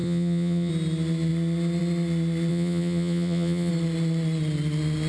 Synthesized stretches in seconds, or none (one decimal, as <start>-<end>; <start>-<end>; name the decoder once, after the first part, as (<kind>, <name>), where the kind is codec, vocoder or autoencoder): 0.0-0.7 (vocoder, Vocos); 2.5-3.7